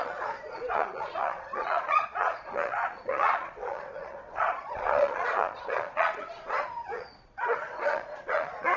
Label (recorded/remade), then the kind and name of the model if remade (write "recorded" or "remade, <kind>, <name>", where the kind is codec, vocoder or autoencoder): remade, vocoder, Vocos